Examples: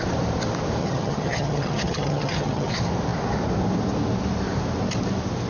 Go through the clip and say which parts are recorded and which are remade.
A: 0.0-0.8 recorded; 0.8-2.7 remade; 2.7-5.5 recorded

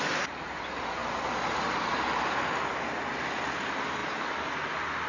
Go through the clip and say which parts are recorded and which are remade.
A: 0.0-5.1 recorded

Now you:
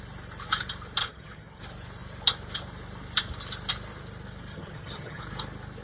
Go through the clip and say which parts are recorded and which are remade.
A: 0.0-1.0 recorded; 1.0-1.6 remade; 1.6-4.5 recorded; 4.5-5.2 remade; 5.2-5.8 recorded